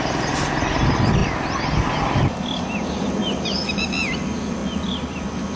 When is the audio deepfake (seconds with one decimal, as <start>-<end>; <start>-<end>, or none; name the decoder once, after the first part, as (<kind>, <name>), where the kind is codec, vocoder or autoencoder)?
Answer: none